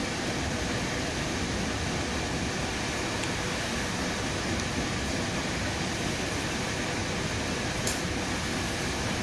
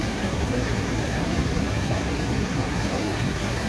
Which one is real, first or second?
first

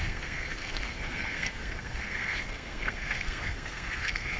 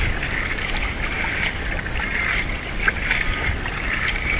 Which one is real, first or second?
second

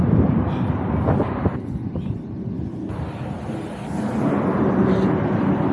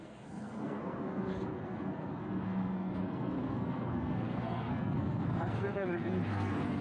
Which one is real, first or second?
first